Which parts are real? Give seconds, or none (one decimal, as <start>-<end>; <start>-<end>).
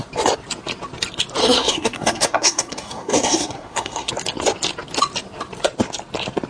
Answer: 0.0-1.4; 4.1-6.5